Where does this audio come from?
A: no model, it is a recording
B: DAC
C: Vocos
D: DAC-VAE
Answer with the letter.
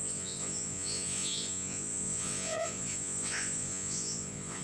C